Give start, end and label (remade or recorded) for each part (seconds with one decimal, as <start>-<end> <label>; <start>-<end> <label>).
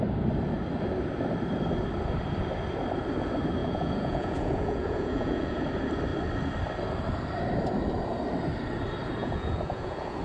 0.0-3.6 recorded; 3.6-5.6 remade; 5.6-9.2 recorded; 9.2-10.2 remade